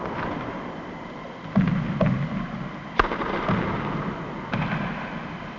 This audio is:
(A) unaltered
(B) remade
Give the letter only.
A